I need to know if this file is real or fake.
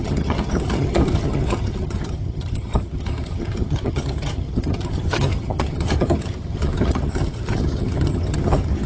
fake